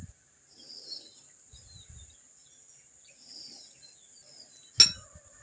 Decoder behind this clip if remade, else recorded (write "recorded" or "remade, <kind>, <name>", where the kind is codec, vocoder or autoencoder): recorded